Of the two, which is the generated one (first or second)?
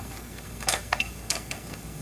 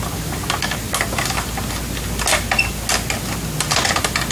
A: first